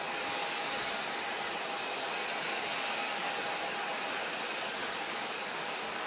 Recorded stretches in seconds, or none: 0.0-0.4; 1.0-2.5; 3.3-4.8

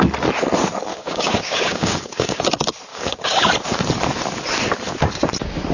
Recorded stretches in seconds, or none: 0.0-0.9; 2.4-2.9; 3.5-5.7